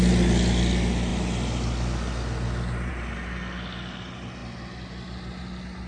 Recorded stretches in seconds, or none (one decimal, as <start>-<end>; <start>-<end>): 0.0-5.9